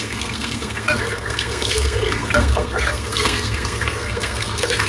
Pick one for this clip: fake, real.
fake